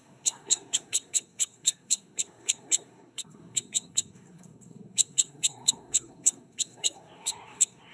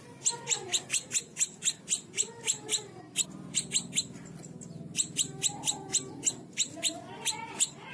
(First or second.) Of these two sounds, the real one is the second